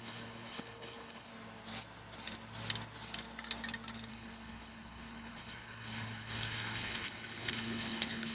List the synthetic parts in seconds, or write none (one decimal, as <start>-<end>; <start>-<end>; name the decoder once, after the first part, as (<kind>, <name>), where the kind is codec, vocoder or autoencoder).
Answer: 0.0-1.3 (codec, HILCodec); 4.1-8.3